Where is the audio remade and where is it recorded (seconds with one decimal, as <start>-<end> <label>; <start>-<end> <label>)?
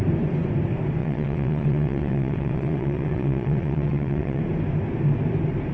0.0-1.0 recorded; 1.0-4.4 remade; 4.4-5.7 recorded